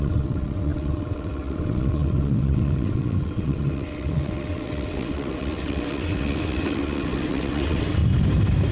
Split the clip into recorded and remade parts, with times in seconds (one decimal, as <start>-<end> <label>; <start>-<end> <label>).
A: 0.0-8.0 remade; 8.0-8.7 recorded